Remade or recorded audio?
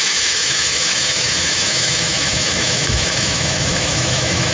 remade